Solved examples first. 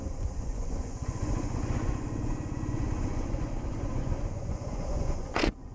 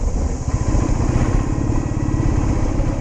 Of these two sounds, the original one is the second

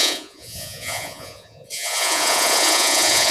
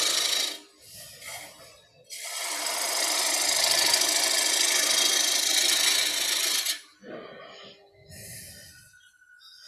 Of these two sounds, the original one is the second